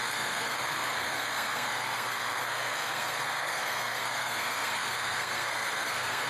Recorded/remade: remade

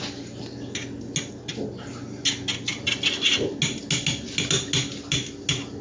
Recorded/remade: recorded